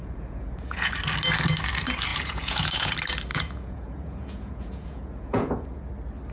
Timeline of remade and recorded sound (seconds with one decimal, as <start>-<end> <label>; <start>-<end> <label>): 0.0-0.9 remade; 0.9-2.1 recorded; 2.1-2.9 remade; 2.9-3.3 recorded; 3.3-5.8 remade; 5.8-6.3 recorded